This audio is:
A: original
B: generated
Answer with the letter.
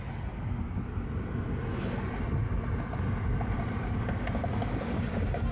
A